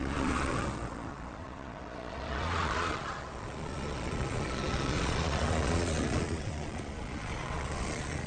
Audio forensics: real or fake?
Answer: fake